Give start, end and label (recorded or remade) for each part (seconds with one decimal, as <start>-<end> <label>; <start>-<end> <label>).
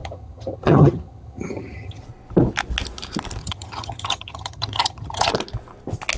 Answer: 0.0-2.0 remade; 2.0-3.4 recorded; 3.4-5.3 remade; 5.3-6.2 recorded